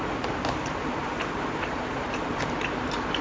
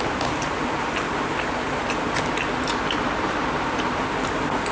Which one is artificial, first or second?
first